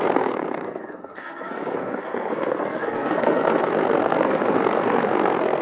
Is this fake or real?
fake